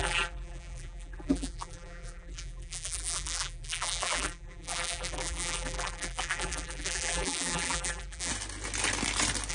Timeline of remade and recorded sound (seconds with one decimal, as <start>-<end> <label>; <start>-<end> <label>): 0.0-8.3 remade; 8.3-9.5 recorded